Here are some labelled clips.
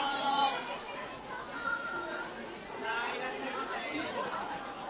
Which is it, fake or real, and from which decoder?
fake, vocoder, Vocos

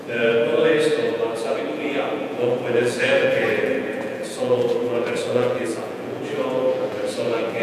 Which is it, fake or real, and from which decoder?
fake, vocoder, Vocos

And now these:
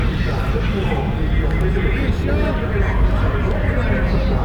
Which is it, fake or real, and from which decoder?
real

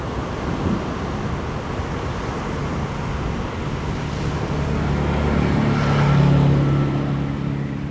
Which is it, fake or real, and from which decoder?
real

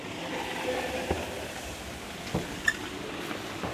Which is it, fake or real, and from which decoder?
real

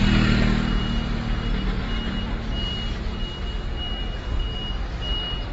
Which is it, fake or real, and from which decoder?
real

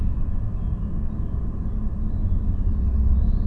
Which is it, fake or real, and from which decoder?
real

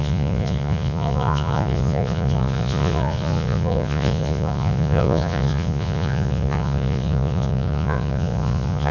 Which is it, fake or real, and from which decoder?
fake, vocoder, Vocos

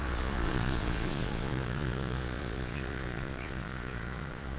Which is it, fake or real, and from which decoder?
fake, vocoder, Vocos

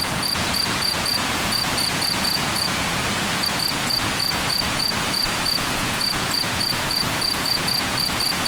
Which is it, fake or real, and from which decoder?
fake, vocoder, Vocos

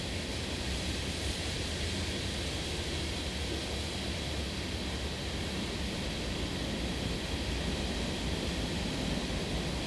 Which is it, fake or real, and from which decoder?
real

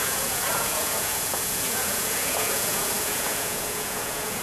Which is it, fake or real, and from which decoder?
fake, vocoder, Vocos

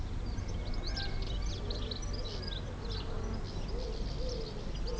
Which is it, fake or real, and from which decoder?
real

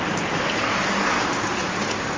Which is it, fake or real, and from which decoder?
real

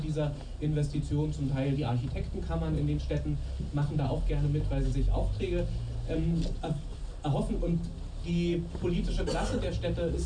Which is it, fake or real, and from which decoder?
real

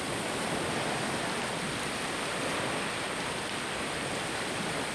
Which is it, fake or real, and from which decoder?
real